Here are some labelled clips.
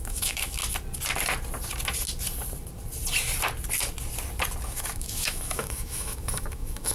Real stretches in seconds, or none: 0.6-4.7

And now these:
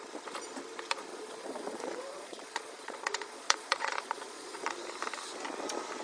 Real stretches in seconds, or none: 0.0-1.1; 4.7-6.0

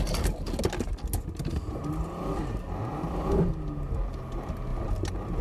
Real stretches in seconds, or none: 0.0-5.4